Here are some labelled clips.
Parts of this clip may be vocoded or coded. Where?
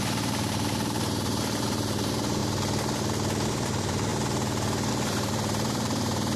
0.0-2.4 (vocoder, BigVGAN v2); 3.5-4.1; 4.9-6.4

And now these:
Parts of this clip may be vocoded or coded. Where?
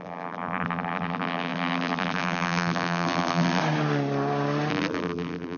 0.0-3.6 (vocoder, BigVGAN v2); 4.7-5.6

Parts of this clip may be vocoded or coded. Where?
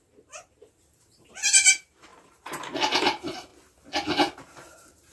0.0-3.5 (vocoder, BigVGAN v2); 4.4-5.1